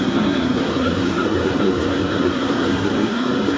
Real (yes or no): no